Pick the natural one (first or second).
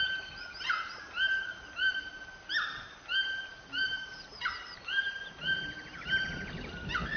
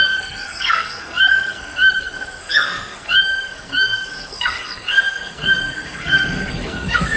first